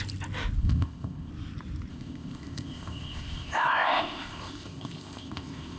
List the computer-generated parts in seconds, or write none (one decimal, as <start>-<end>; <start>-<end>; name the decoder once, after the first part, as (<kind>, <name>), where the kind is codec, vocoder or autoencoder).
0.6-1.3 (codec, ZipCodec); 1.9-5.8